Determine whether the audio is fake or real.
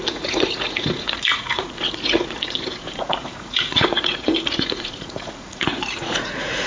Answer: fake